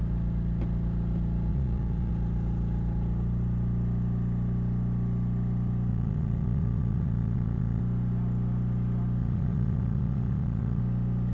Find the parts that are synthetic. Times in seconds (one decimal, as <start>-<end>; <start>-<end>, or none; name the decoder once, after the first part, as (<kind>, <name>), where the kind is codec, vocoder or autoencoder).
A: 1.5-2.1 (vocoder, Vocos); 5.9-7.8; 9.2-10.8